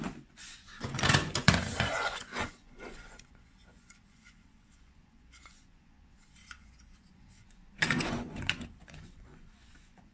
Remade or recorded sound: remade